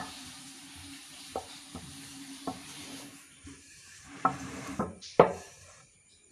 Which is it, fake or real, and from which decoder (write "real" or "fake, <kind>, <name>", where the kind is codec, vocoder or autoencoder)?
fake, vocoder, BigVGAN v2